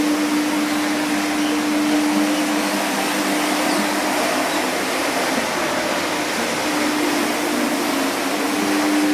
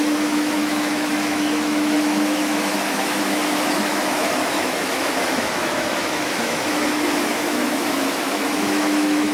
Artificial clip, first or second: second